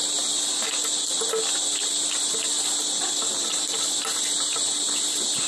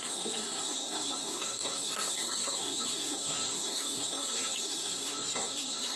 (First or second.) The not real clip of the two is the second